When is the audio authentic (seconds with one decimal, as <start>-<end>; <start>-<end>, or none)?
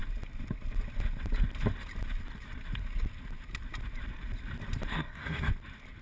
0.0-4.9; 5.5-6.0